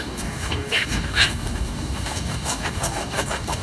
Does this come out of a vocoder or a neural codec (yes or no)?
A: yes